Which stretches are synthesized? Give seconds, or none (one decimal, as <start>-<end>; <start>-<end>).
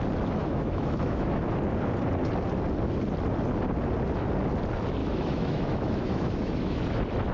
0.4-1.4; 5.0-6.8